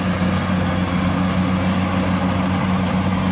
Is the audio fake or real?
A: real